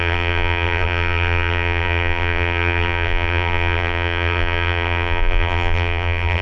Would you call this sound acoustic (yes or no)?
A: no